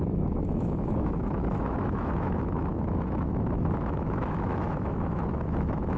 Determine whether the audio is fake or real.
fake